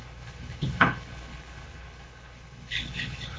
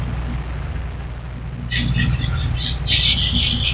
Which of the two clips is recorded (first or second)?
second